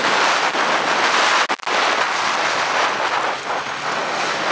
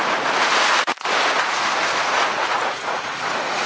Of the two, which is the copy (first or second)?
second